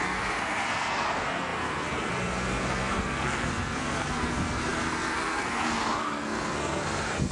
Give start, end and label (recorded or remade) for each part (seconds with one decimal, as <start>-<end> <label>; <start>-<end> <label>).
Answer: 0.0-7.3 remade